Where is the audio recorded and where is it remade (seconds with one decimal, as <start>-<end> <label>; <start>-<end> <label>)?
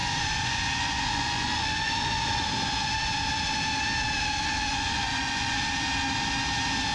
0.0-2.5 remade; 2.5-4.7 recorded; 4.7-5.6 remade; 5.6-6.9 recorded